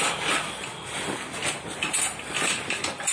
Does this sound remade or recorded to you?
recorded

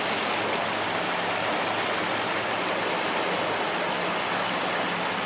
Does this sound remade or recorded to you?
recorded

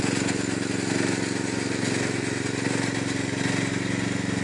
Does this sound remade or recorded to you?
recorded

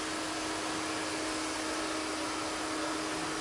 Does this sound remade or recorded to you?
recorded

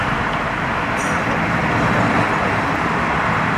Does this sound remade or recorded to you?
recorded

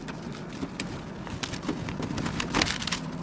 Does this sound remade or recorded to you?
recorded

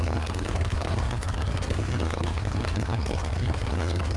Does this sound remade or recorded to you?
remade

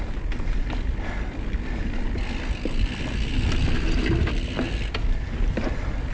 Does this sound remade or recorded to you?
recorded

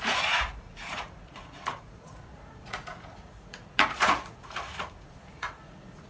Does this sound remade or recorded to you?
remade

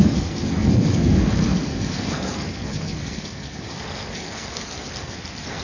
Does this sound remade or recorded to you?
remade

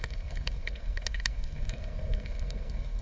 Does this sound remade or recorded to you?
remade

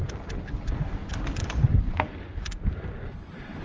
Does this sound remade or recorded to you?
recorded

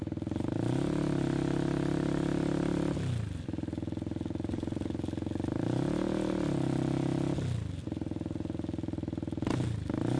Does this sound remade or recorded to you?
recorded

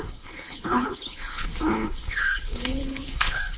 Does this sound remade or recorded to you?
remade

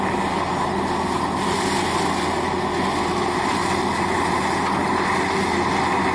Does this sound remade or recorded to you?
recorded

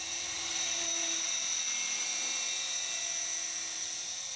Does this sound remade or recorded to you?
remade